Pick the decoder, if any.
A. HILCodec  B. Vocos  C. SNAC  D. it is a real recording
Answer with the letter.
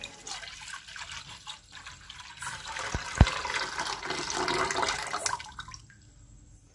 D